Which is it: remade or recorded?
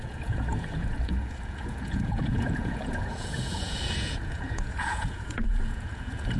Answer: remade